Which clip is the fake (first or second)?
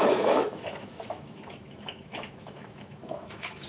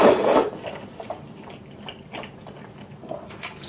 first